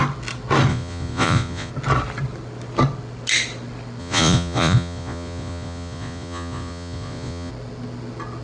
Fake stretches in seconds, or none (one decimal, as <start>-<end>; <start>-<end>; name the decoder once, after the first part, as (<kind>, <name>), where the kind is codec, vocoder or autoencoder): 0.7-1.7 (vocoder, Vocos); 4.0-7.5